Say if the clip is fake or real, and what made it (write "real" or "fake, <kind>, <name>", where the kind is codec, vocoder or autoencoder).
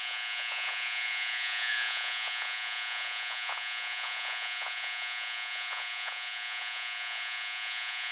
fake, vocoder, Vocos